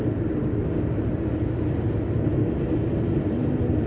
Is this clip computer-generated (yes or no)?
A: no